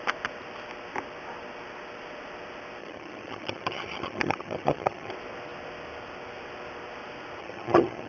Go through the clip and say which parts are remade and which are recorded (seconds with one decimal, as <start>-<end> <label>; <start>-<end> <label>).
0.0-2.8 recorded; 2.8-5.1 remade; 5.1-7.4 recorded; 7.4-8.1 remade